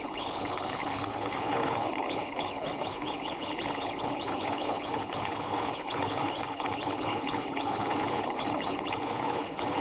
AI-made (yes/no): yes